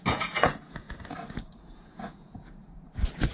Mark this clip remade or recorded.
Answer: remade